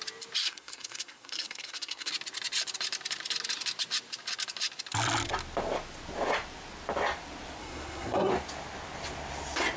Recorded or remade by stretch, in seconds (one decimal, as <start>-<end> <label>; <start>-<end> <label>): 0.0-0.4 recorded; 0.4-2.1 remade; 2.1-7.6 recorded; 7.6-8.3 remade; 8.3-9.8 recorded